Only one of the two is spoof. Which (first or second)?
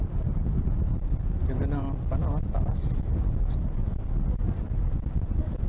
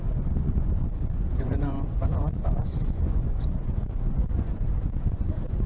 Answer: second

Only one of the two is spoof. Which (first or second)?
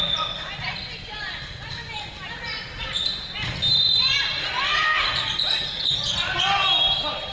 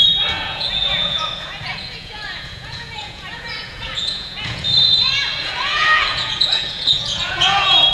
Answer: second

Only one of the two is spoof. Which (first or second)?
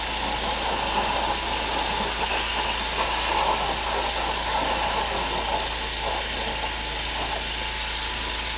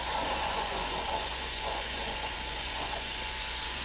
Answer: second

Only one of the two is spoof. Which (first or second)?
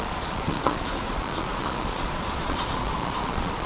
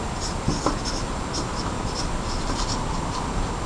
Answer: first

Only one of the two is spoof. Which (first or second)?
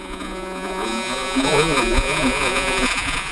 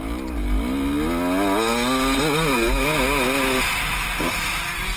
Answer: first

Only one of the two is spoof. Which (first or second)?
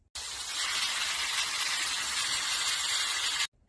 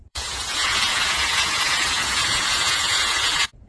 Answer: second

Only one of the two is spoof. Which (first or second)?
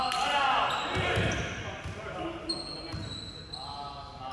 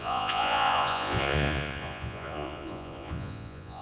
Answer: second